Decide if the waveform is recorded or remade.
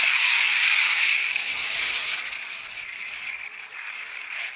remade